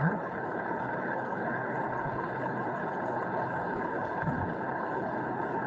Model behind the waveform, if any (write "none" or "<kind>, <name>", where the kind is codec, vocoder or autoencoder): codec, HILCodec